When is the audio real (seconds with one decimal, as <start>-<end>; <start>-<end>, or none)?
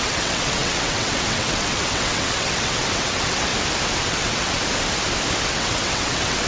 3.5-4.0; 4.6-5.4